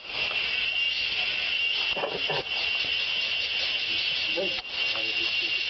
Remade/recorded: recorded